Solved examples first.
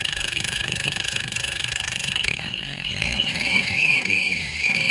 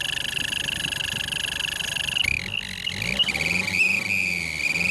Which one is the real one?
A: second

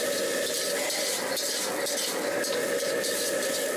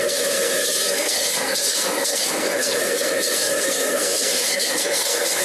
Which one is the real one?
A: first